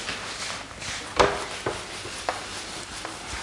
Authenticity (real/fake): real